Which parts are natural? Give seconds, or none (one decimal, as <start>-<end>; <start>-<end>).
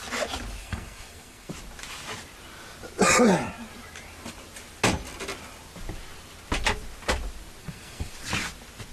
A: 0.0-0.6; 1.5-7.6; 8.1-8.9